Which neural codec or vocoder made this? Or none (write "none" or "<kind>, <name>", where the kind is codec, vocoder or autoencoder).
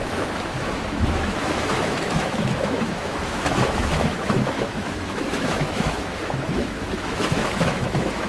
autoencoder, DAC-VAE